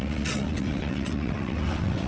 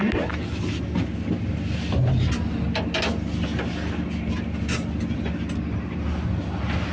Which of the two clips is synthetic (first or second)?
first